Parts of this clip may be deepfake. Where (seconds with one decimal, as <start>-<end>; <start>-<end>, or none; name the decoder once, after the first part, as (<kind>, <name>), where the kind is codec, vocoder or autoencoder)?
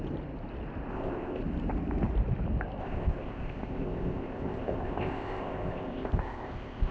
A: 0.9-1.4 (codec, ZipCodec); 2.8-6.9